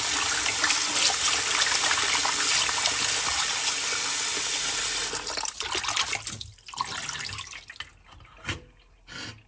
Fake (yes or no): no